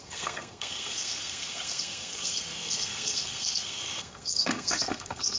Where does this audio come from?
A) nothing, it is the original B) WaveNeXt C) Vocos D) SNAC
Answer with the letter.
D